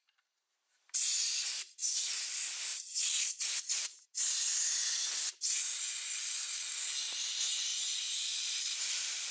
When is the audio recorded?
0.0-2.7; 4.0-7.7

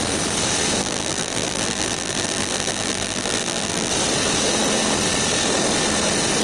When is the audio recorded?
0.0-0.8; 3.9-6.4